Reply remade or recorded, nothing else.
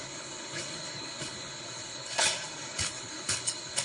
remade